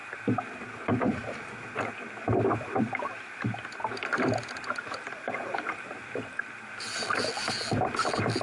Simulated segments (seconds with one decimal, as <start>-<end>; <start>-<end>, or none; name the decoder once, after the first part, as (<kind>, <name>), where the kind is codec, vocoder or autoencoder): none